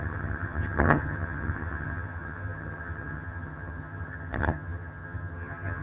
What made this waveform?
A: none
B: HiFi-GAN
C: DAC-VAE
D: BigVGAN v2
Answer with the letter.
B